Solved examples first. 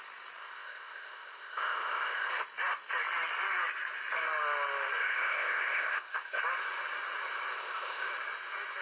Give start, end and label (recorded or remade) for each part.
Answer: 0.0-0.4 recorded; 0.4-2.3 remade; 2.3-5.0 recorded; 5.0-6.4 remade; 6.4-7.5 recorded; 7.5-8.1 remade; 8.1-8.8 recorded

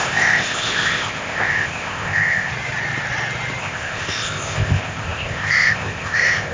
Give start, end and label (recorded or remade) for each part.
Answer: 0.0-2.5 remade; 2.5-3.6 recorded; 3.6-6.5 remade